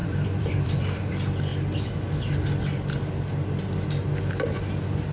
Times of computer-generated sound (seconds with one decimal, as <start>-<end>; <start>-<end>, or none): 0.0-1.1